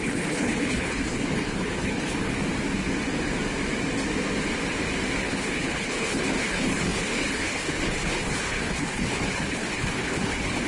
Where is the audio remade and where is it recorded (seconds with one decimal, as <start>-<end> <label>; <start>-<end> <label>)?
0.0-2.3 remade; 2.3-5.2 recorded; 5.2-10.7 remade